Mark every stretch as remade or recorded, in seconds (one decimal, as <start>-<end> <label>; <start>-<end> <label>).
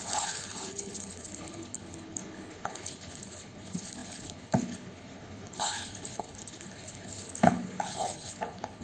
0.0-8.8 remade